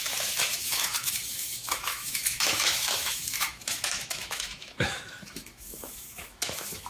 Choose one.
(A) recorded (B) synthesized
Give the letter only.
B